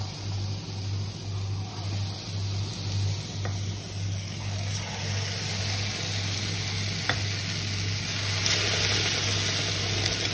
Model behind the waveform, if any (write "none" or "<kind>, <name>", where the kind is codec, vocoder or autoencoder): none